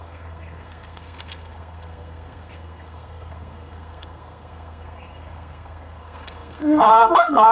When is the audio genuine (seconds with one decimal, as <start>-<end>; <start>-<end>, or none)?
none